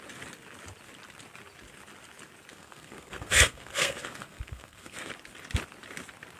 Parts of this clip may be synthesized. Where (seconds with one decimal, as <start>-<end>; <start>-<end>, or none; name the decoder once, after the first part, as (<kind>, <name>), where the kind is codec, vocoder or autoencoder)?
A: 2.5-5.1 (codec, SNAC)